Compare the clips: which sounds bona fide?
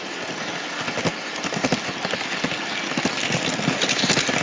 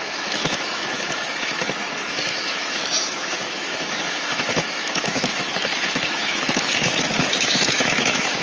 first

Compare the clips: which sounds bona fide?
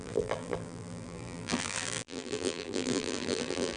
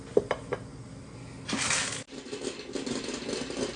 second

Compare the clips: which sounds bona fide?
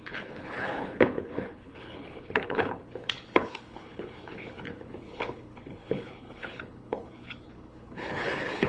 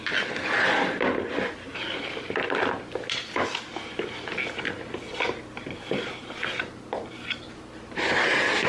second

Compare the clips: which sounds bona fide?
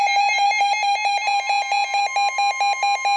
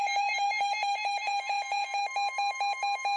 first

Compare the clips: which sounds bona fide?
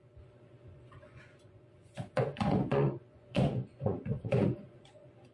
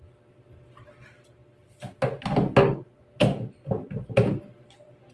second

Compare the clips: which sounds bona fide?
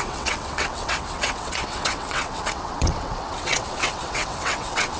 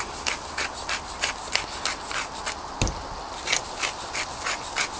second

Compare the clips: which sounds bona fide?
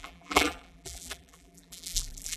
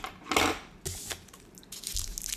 second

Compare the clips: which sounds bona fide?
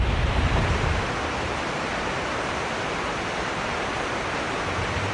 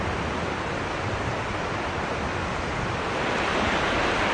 second